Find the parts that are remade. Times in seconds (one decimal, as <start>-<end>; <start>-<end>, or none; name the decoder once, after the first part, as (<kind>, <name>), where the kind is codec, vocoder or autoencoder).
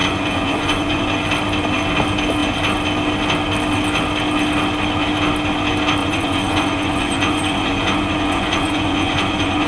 0.0-1.0 (vocoder, Vocos); 6.0-9.7